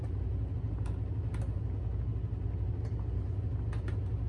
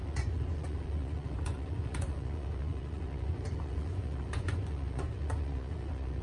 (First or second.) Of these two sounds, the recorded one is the first